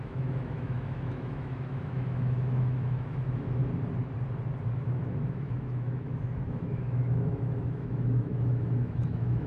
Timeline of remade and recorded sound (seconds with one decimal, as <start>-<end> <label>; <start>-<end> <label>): 0.0-3.6 remade; 3.6-4.7 recorded; 4.7-9.5 remade

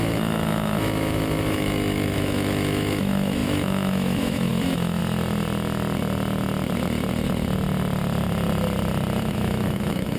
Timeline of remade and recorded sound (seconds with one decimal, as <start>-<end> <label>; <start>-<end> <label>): 0.0-5.0 remade; 5.0-9.2 recorded; 9.2-10.2 remade